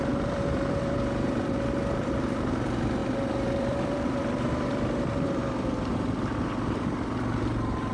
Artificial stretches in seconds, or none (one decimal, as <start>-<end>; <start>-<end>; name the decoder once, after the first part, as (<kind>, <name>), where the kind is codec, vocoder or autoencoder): 0.0-7.9 (vocoder, BigVGAN v2)